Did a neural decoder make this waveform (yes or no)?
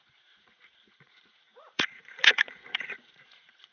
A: yes